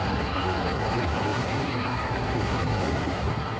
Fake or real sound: fake